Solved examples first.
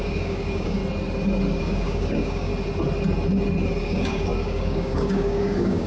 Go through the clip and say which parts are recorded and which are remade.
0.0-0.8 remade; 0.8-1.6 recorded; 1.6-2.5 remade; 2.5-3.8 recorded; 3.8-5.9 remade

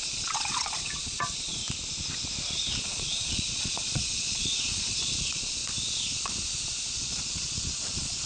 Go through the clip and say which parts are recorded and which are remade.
0.0-1.6 remade; 1.6-2.8 recorded; 2.8-5.6 remade; 5.6-6.9 recorded; 6.9-8.3 remade

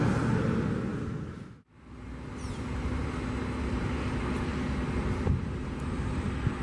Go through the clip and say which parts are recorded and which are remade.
0.0-6.6 recorded

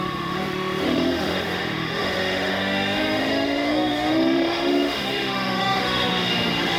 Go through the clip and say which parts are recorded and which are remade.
0.0-6.8 remade

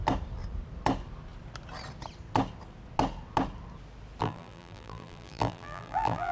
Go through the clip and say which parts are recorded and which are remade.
0.0-4.2 recorded; 4.2-6.3 remade

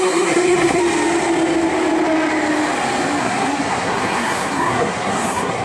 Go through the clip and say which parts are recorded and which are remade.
0.0-0.8 remade; 0.8-3.2 recorded; 3.2-5.6 remade

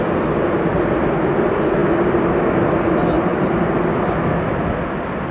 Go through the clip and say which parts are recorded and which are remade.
0.0-5.3 recorded

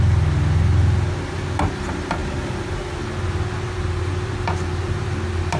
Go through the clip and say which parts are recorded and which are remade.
0.0-5.6 recorded